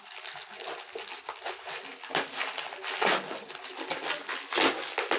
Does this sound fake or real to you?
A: real